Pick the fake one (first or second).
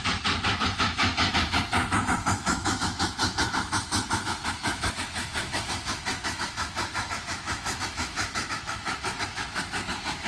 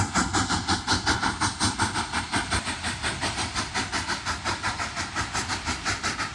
first